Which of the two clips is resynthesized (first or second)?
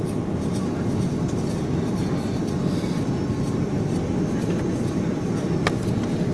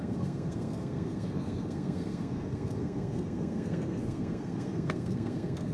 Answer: second